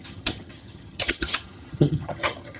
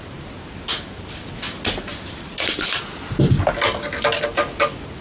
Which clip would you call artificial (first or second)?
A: first